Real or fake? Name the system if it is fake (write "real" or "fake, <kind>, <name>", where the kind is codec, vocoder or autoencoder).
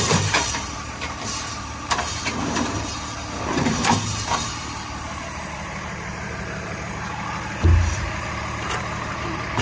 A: fake, vocoder, BigVGAN v2